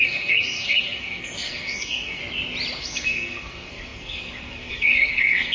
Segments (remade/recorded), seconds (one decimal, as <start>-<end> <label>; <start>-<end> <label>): 0.0-2.2 remade; 2.2-2.8 recorded; 2.8-5.5 remade